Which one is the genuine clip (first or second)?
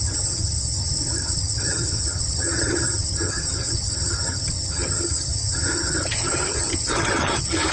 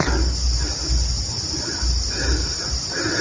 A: second